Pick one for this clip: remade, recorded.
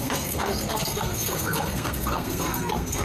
remade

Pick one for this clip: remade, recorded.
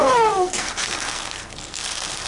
remade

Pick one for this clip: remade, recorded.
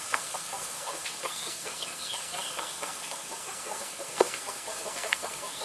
remade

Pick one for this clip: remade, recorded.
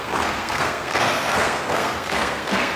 remade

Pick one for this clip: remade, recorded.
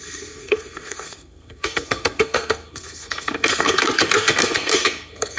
remade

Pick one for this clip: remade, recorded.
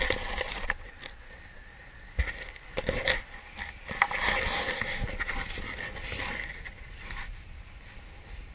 recorded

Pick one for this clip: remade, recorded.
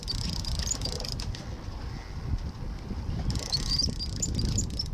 recorded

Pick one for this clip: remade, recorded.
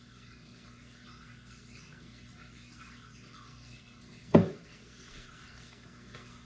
remade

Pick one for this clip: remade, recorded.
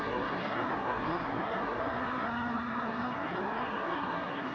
remade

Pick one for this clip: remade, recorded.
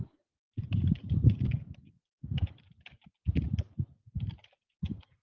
recorded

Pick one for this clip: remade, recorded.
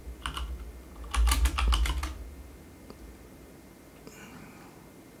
recorded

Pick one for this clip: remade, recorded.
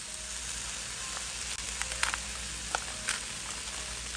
recorded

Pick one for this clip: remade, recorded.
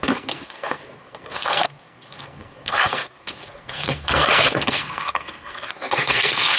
remade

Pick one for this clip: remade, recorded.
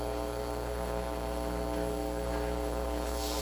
remade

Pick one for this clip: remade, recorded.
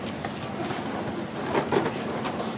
recorded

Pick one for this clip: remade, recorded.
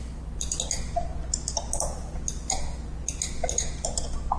recorded